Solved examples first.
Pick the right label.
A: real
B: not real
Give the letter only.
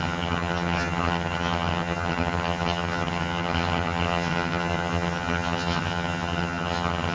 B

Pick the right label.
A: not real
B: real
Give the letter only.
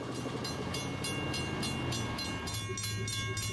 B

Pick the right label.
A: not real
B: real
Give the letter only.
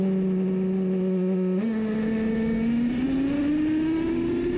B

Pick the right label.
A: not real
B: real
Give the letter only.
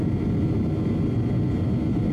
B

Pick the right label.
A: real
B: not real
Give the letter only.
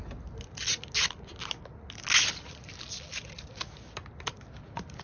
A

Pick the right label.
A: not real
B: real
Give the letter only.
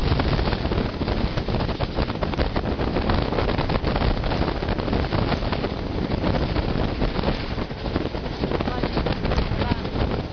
B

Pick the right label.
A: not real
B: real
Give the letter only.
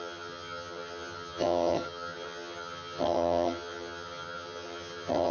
A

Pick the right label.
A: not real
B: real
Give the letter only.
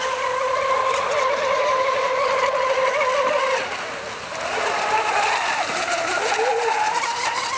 B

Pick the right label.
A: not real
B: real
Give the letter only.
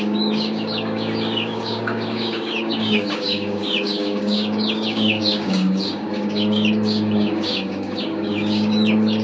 A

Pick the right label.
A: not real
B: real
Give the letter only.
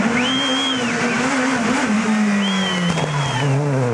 B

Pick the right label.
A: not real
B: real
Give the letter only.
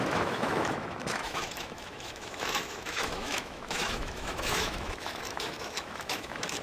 A